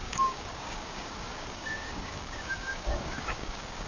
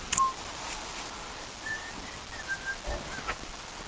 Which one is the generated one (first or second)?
first